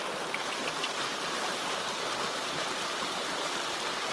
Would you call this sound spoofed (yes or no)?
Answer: no